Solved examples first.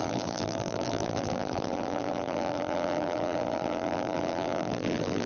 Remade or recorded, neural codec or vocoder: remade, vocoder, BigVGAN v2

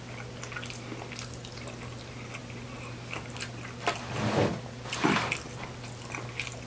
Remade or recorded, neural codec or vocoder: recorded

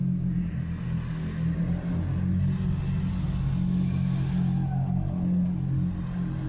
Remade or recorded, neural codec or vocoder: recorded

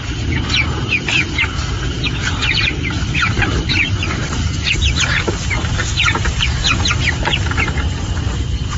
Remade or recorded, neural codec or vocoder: remade, vocoder, BigVGAN v2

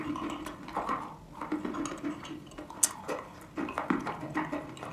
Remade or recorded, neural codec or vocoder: recorded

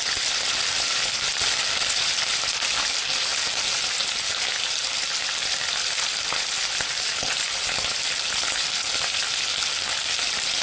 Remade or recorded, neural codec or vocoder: recorded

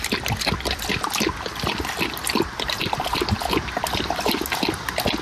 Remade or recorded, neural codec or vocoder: recorded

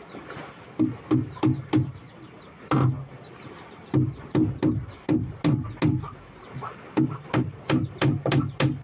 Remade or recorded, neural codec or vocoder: recorded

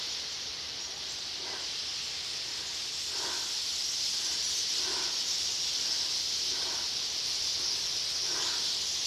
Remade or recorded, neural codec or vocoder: recorded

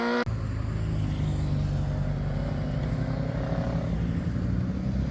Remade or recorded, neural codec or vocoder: recorded